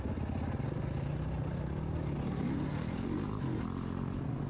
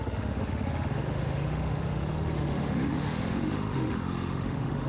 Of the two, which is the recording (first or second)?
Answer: first